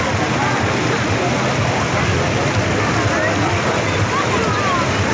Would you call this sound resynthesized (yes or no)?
no